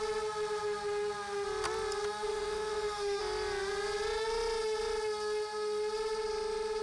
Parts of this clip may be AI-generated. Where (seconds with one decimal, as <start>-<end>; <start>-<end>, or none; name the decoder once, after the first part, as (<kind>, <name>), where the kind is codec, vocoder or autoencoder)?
2.3-3.2 (autoencoder, DAC-VAE)